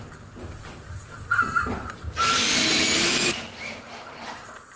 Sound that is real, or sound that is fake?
fake